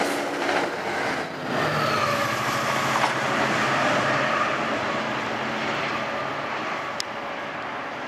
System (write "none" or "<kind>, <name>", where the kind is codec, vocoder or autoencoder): none